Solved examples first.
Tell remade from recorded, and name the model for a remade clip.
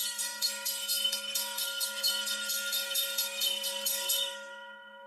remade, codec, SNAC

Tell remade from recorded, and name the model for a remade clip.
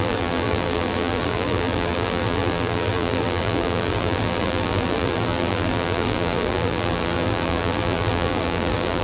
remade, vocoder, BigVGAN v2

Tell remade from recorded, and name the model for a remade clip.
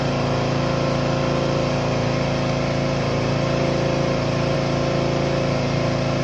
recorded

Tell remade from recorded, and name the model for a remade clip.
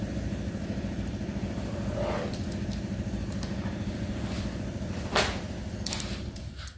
recorded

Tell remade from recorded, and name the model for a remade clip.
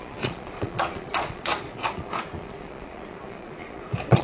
remade, vocoder, Vocos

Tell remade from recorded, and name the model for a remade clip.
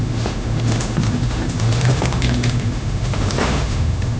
remade, autoencoder, DAC-VAE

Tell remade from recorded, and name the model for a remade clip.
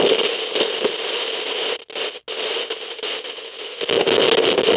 recorded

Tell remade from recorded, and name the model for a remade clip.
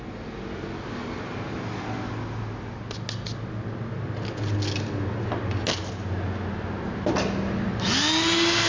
recorded